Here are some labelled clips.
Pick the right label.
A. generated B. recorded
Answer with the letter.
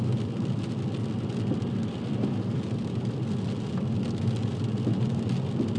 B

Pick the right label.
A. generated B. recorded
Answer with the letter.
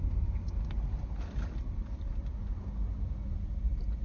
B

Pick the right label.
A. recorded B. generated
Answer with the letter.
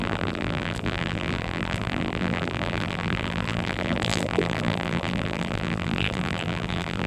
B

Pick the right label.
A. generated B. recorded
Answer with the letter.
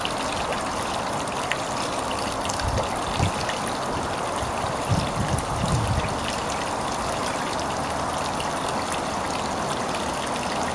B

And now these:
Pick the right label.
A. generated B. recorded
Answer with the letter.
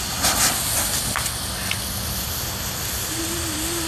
B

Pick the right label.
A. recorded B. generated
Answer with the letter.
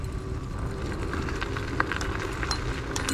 A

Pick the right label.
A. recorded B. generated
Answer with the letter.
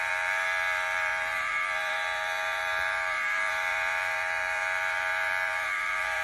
B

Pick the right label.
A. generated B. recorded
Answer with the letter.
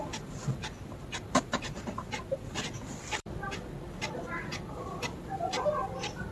A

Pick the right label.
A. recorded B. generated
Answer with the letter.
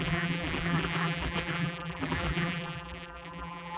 B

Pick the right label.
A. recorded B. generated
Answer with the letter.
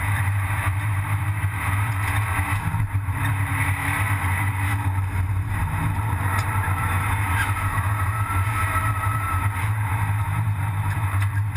B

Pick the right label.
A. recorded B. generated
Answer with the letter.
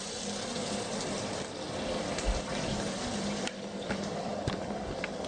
B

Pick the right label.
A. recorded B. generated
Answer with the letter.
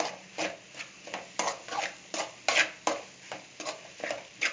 A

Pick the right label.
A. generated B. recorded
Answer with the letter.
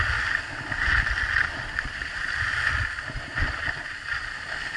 B